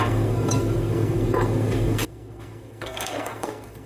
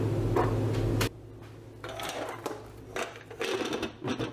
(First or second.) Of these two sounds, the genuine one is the second